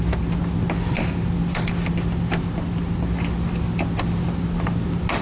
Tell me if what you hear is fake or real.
real